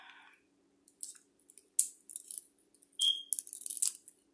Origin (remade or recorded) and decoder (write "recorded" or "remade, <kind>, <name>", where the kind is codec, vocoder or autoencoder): recorded